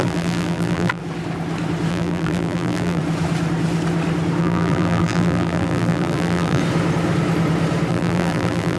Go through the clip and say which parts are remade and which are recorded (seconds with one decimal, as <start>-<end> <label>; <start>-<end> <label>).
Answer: 0.0-1.0 remade; 1.0-1.9 recorded; 1.9-3.0 remade; 3.0-4.4 recorded; 4.4-6.6 remade; 6.6-7.9 recorded; 7.9-8.8 remade